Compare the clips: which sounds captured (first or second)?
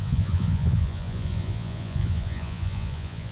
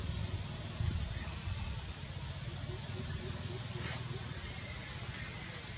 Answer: second